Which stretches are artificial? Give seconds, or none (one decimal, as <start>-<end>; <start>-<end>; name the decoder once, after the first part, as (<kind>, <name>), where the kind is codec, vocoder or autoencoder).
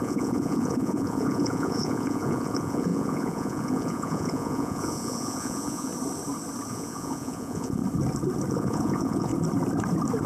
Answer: 0.0-5.9 (vocoder, Vocos); 6.7-7.8; 8.5-9.3